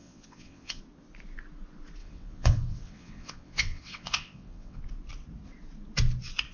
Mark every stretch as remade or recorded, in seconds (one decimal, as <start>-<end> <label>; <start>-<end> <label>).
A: 0.0-0.8 remade; 0.8-2.0 recorded; 2.0-4.8 remade; 4.8-6.5 recorded